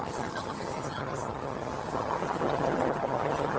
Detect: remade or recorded remade